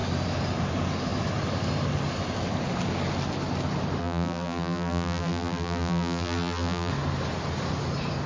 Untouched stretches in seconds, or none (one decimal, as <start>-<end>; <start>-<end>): 0.0-4.0; 6.9-8.3